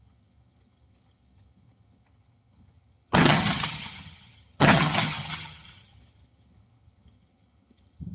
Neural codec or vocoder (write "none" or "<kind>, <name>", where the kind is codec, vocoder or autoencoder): vocoder, HiFi-GAN